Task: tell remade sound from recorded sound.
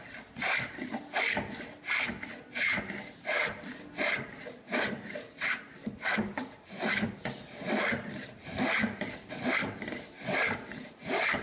recorded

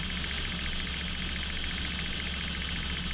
recorded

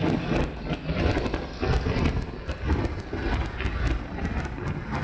recorded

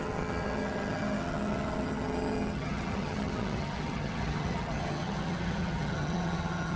remade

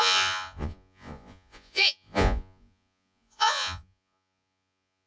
remade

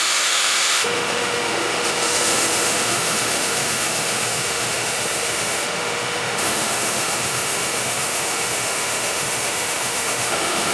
remade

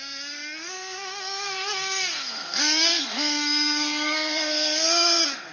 remade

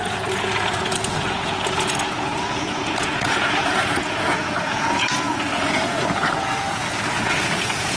remade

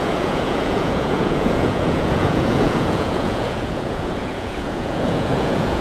remade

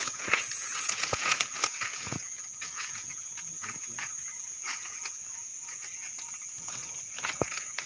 remade